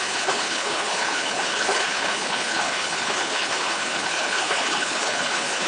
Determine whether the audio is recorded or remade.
remade